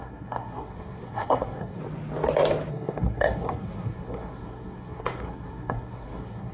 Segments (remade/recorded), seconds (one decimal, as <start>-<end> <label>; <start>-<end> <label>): 0.0-1.8 remade; 1.8-2.7 recorded; 2.7-6.5 remade